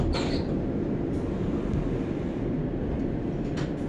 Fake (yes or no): no